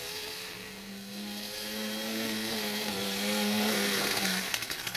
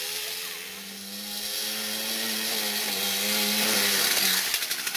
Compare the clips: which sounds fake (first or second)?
first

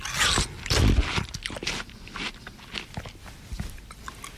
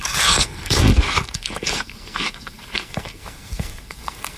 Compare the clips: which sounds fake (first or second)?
second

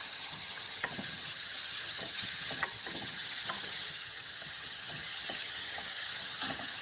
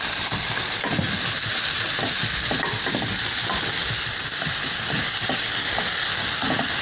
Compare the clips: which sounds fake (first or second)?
first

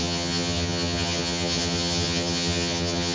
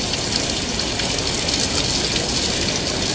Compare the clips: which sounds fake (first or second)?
first